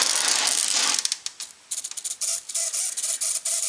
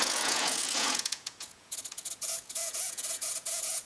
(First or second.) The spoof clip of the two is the second